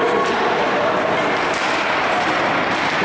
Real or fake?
real